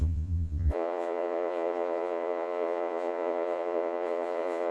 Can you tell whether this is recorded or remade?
remade